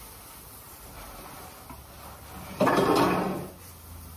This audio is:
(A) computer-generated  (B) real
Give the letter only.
B